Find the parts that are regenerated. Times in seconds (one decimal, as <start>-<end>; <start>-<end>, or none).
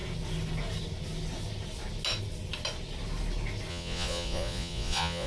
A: 3.7-5.3